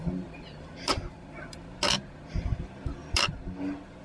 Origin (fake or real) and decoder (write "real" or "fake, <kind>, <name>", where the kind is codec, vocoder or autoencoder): real